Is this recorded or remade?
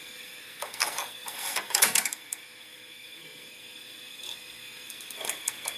remade